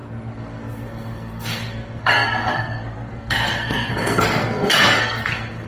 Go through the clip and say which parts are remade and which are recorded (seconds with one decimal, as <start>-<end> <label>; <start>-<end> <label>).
0.0-5.7 remade